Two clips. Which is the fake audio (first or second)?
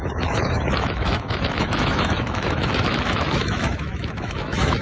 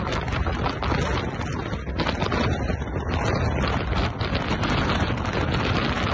first